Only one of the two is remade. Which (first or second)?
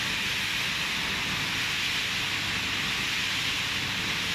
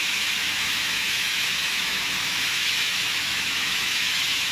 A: second